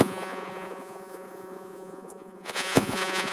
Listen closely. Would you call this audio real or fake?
fake